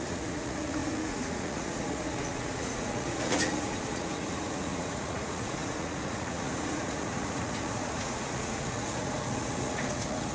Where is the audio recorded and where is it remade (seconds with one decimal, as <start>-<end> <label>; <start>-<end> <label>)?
0.0-10.3 remade

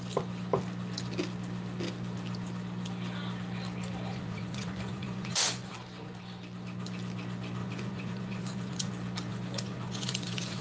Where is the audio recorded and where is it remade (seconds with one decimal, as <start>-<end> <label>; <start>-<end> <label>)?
0.0-4.1 recorded; 4.1-5.7 remade; 5.7-7.6 recorded; 7.6-8.9 remade; 8.9-9.3 recorded; 9.3-10.6 remade

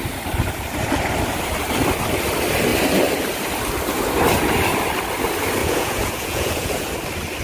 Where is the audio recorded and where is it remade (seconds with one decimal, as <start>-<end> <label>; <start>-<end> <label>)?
0.0-5.6 recorded; 5.6-6.9 remade; 6.9-7.4 recorded

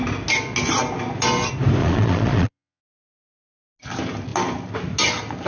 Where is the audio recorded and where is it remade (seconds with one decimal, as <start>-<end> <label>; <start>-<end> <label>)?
0.0-1.8 recorded; 1.8-2.8 remade; 2.8-5.5 recorded

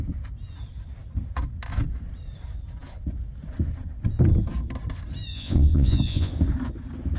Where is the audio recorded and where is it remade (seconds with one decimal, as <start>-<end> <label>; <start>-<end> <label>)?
0.0-5.3 recorded; 5.3-6.3 remade; 6.3-7.2 recorded

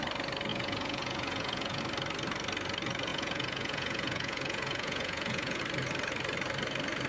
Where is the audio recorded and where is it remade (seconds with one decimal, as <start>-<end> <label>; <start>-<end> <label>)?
0.0-0.5 recorded; 0.5-1.8 remade; 1.8-3.1 recorded; 3.1-5.6 remade; 5.6-7.1 recorded

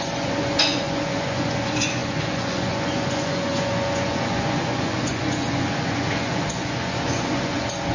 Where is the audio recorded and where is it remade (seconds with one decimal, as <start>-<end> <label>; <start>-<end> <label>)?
0.0-7.9 remade